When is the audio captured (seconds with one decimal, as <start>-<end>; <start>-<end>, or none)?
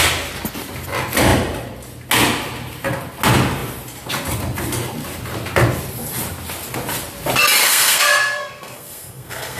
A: 0.0-7.6